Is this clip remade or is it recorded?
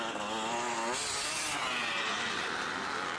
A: recorded